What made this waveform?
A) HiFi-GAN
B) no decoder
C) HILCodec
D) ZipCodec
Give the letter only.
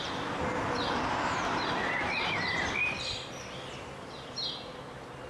B